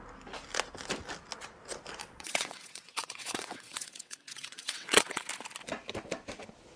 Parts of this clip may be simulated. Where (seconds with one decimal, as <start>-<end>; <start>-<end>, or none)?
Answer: 2.0-5.3